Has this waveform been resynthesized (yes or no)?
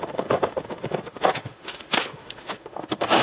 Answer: yes